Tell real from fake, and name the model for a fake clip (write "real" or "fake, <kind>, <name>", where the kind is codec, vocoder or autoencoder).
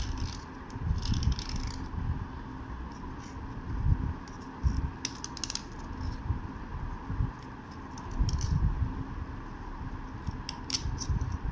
real